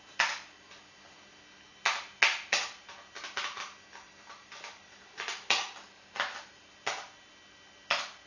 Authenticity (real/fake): real